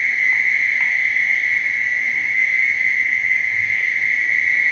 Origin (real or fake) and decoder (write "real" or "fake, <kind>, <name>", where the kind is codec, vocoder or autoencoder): real